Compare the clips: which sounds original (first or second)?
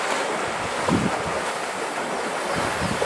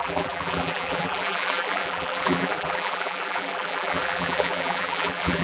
first